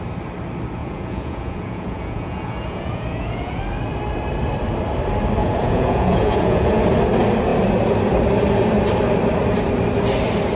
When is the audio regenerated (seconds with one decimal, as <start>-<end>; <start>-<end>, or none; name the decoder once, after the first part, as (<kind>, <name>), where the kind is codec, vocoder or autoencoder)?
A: 0.8-3.6 (vocoder, Vocos); 5.4-6.8